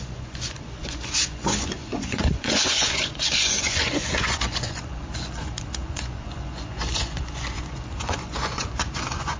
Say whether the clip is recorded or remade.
remade